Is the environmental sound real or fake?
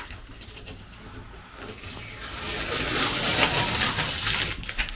real